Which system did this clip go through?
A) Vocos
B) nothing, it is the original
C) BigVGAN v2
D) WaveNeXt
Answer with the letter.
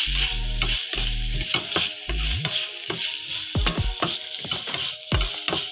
B